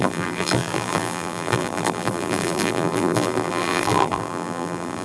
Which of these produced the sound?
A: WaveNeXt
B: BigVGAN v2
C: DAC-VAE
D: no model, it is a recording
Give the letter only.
B